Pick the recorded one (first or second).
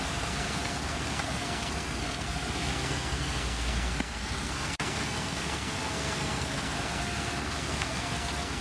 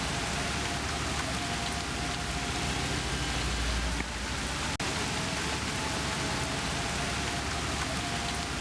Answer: second